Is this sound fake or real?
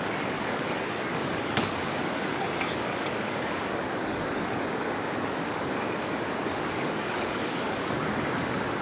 fake